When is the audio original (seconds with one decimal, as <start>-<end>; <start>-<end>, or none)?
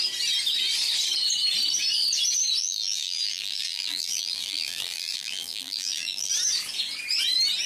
0.0-2.6; 6.3-7.7